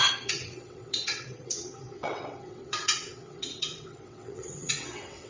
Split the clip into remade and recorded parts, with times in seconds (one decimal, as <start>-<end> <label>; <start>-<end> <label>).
0.0-5.3 remade